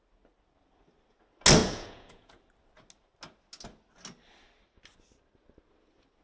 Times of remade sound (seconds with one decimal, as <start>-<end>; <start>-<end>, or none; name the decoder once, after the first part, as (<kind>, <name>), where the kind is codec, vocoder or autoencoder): 1.6-2.4 (vocoder, Vocos)